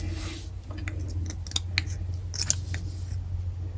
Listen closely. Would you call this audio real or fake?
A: real